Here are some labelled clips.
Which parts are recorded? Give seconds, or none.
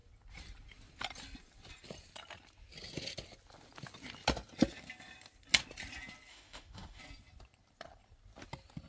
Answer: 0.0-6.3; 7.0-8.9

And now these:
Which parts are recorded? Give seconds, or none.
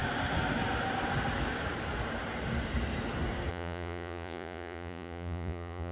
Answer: 0.0-3.5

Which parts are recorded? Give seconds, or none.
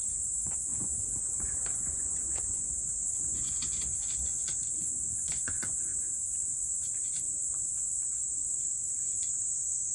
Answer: none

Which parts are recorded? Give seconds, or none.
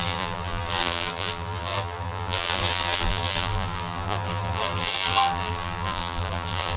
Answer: none